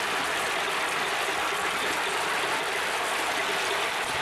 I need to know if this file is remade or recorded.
recorded